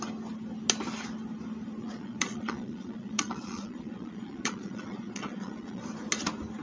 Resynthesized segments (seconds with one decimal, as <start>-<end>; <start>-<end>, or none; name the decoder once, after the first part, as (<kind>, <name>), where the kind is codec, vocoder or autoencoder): 1.8-5.8 (vocoder, Vocos)